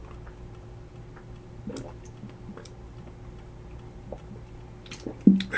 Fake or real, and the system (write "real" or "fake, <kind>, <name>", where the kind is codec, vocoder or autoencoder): real